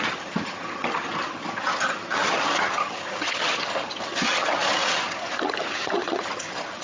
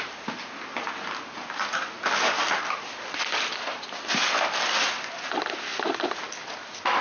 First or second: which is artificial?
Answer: first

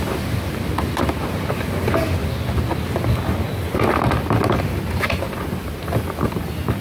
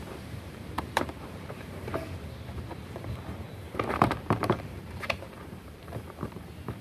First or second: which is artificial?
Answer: second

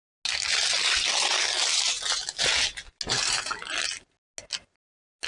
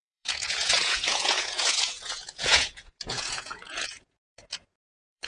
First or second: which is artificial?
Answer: second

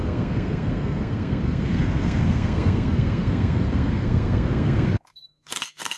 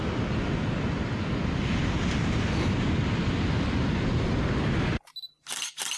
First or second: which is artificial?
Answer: first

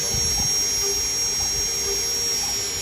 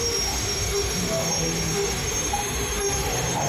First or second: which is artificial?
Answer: second